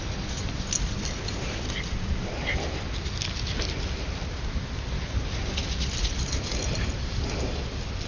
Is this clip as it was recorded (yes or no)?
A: yes